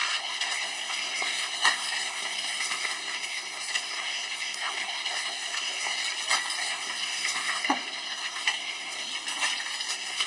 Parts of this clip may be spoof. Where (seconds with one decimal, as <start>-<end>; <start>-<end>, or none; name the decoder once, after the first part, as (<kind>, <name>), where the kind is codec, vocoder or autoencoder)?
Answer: 0.0-6.0 (codec, SNAC); 6.6-9.1; 9.9-10.3